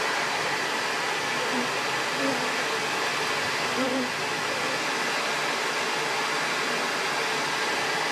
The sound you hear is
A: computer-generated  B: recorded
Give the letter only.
B